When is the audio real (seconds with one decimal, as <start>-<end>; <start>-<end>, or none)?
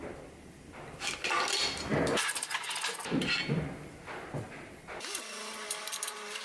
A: 0.0-6.4